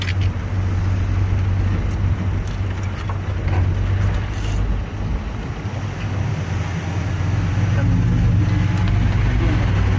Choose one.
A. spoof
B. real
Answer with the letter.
B